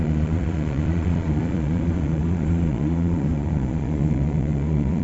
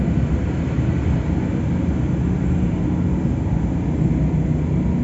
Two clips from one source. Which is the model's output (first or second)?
first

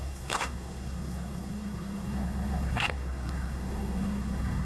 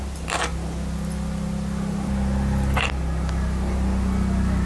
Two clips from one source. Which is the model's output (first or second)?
first